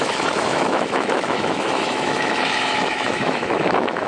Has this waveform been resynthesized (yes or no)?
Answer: yes